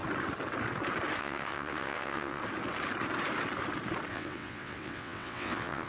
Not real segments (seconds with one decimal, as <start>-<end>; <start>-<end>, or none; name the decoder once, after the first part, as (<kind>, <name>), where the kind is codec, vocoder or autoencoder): 1.2-2.4 (vocoder, WaveNeXt); 4.1-5.9